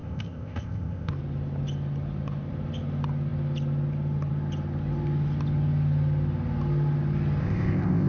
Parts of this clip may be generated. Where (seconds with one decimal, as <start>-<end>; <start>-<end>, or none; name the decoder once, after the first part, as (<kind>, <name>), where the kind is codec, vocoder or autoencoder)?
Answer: 0.0-1.1 (codec, ZipCodec); 7.4-8.1